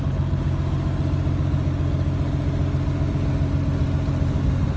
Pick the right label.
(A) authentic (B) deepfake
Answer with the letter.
A